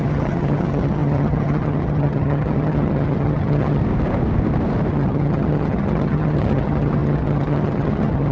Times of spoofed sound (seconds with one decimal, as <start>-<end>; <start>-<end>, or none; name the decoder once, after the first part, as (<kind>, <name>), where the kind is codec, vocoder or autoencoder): 0.0-3.8 (vocoder, HiFi-GAN); 4.9-8.3